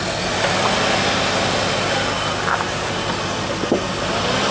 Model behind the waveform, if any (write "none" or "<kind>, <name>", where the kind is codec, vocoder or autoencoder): none